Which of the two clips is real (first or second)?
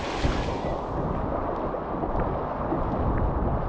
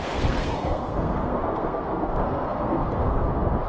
first